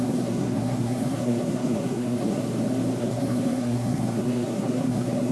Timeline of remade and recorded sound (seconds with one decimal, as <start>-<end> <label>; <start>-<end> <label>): 0.0-2.4 remade; 2.4-3.0 recorded; 3.0-5.3 remade